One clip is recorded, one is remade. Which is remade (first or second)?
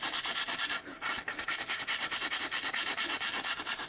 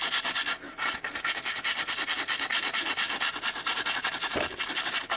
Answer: first